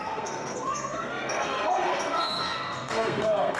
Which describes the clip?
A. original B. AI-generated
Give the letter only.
B